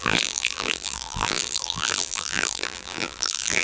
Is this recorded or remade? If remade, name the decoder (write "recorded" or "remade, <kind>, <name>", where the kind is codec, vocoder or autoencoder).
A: remade, vocoder, BigVGAN v2